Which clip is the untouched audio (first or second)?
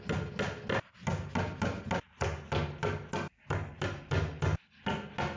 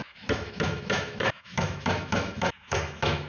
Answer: first